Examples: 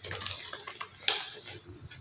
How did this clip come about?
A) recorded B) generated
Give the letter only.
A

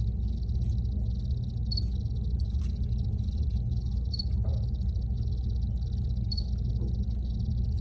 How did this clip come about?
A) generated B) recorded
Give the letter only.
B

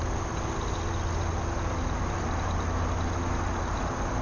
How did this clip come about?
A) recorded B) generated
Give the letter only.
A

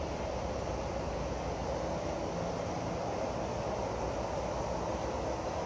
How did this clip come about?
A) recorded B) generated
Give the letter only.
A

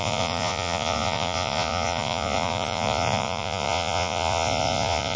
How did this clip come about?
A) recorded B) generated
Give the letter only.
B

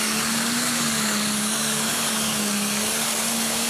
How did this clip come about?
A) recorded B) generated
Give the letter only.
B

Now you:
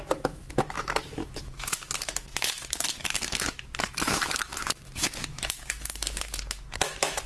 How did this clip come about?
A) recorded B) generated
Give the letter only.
B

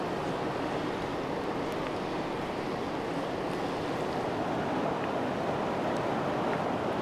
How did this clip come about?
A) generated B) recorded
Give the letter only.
B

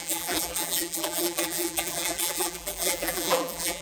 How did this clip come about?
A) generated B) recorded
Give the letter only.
A